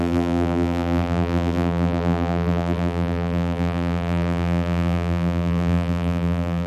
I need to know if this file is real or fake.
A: fake